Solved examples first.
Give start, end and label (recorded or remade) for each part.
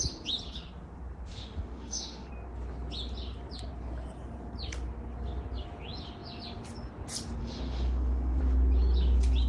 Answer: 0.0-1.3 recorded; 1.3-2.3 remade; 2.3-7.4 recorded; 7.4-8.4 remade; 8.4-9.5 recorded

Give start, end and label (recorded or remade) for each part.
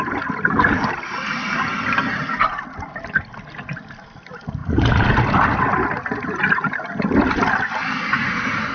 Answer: 0.0-8.7 recorded